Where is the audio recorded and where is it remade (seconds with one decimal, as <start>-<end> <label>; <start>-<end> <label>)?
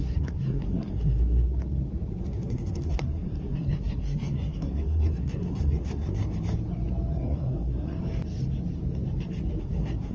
0.0-1.6 remade; 1.6-2.2 recorded; 2.2-6.2 remade; 6.2-7.1 recorded; 7.1-8.0 remade; 8.0-9.6 recorded; 9.6-10.1 remade